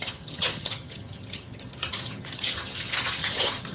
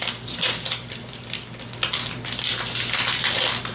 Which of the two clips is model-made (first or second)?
first